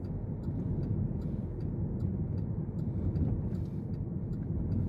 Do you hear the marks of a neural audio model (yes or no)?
no